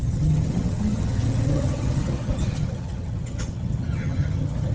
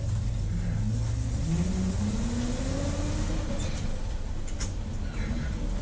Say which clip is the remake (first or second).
first